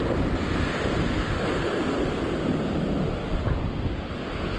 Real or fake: real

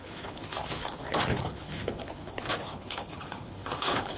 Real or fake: fake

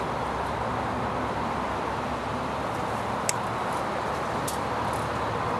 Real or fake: real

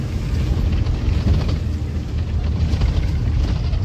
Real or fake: real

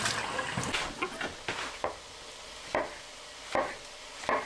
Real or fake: real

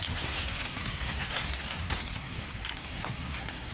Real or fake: fake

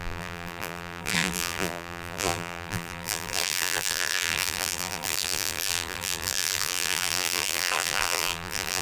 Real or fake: fake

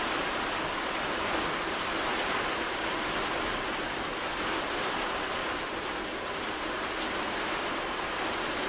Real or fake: real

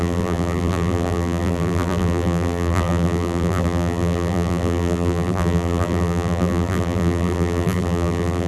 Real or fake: fake